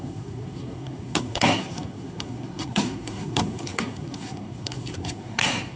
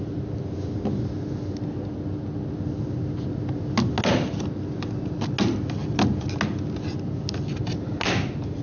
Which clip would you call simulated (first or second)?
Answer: first